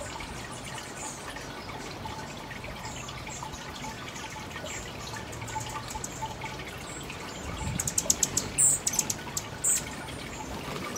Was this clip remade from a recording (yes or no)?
no